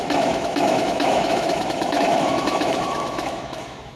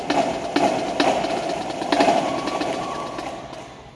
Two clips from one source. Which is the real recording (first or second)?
second